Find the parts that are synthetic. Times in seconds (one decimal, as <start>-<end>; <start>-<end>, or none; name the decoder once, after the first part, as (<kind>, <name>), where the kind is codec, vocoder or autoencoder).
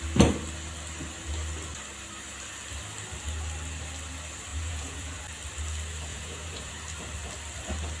4.5-5.2 (vocoder, Vocos); 6.1-6.7